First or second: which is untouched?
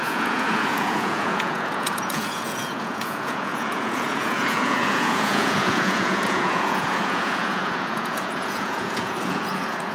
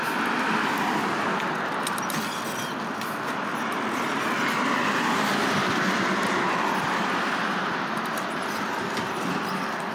second